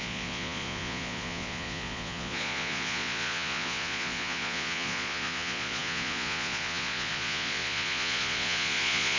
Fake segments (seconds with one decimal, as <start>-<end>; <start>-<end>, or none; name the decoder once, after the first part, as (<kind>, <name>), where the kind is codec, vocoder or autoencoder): 0.0-9.2 (vocoder, Vocos)